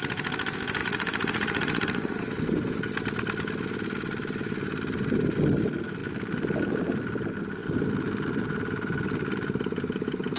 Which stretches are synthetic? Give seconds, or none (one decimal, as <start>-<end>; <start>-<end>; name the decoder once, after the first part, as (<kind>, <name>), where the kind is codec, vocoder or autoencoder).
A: 0.8-2.2 (vocoder, Vocos)